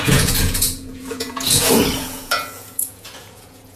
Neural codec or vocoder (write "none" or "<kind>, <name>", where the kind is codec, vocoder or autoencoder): vocoder, Vocos